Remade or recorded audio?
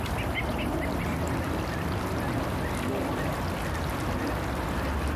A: recorded